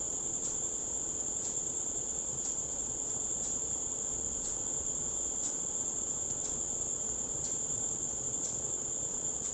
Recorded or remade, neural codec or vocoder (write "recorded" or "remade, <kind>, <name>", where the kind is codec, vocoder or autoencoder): remade, vocoder, Vocos